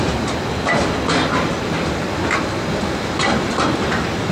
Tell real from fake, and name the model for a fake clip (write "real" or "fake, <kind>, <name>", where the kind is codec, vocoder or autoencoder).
real